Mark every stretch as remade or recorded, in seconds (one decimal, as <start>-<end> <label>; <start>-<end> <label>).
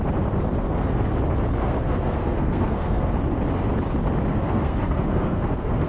0.0-0.6 recorded; 0.6-1.1 remade; 1.1-1.6 recorded; 1.6-3.2 remade; 3.2-4.3 recorded; 4.3-5.9 remade